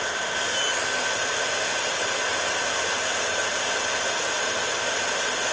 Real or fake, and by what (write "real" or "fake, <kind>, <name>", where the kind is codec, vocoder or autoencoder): real